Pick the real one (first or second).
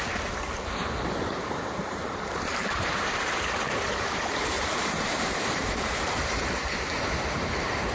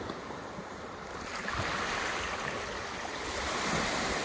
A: second